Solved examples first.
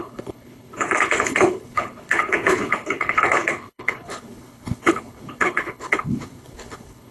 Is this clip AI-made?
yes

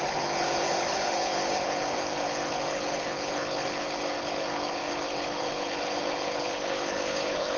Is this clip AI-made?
yes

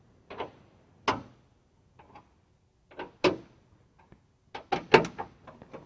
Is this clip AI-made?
no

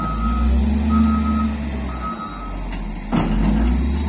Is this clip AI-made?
no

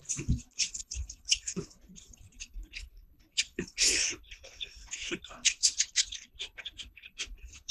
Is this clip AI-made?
yes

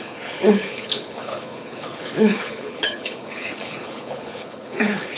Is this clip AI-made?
yes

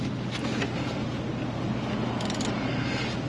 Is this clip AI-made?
no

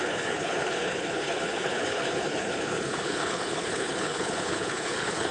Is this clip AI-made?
yes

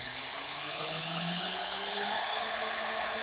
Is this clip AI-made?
yes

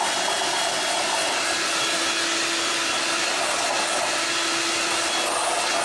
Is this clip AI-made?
no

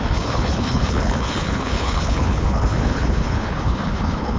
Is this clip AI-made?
yes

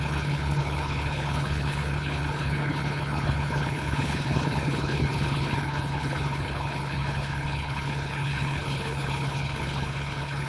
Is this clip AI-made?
yes